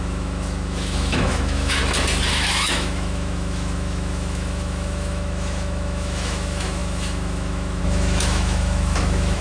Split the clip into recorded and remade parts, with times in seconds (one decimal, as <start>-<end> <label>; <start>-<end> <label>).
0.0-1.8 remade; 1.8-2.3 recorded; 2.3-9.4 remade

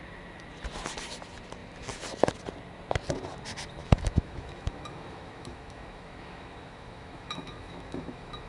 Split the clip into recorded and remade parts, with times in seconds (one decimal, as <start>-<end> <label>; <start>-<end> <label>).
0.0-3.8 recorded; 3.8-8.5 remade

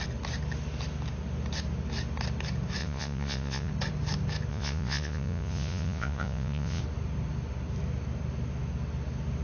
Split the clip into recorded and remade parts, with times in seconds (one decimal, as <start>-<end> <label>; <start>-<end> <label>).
0.0-2.8 recorded; 2.8-3.7 remade; 3.7-4.5 recorded; 4.5-6.8 remade; 6.8-9.4 recorded

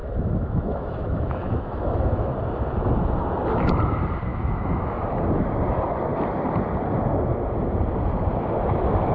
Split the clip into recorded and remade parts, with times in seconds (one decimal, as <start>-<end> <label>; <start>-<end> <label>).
0.0-2.3 remade; 2.3-4.3 recorded; 4.3-5.0 remade; 5.0-9.1 recorded

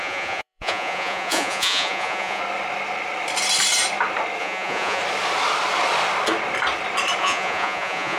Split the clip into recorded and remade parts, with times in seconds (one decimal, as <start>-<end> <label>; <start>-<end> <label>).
0.0-2.4 remade; 2.4-4.4 recorded; 4.4-5.0 remade; 5.0-7.2 recorded; 7.2-8.2 remade